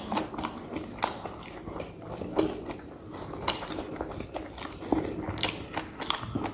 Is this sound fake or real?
fake